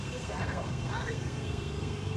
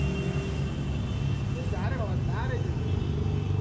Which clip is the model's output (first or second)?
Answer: first